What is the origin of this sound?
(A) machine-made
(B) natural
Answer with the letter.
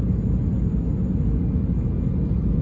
B